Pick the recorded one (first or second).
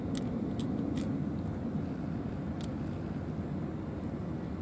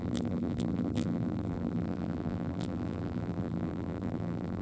first